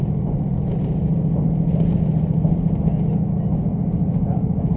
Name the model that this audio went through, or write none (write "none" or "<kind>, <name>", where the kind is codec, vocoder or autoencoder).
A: none